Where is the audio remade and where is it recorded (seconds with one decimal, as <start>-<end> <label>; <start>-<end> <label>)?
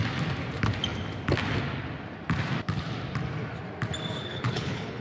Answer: 0.0-4.3 recorded; 4.3-5.0 remade